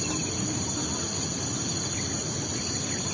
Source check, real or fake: real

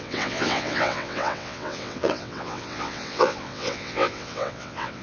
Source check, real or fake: fake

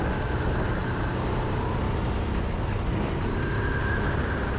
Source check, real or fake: real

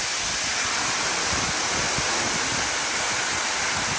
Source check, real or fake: real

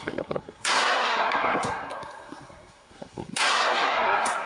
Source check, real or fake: fake